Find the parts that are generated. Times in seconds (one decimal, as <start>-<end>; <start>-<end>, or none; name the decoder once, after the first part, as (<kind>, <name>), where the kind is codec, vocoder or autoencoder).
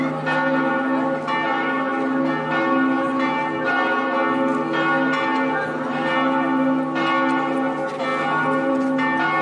none